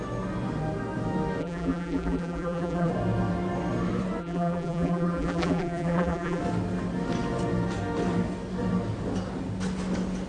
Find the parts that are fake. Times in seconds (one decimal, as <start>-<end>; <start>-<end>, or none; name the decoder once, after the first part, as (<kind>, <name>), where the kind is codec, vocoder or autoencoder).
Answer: 1.4-2.9 (vocoder, BigVGAN v2); 4.2-6.4